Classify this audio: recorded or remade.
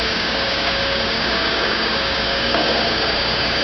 remade